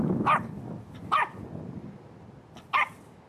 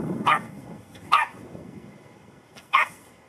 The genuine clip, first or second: first